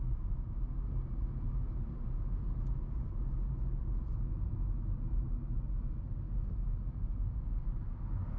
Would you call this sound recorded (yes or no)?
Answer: yes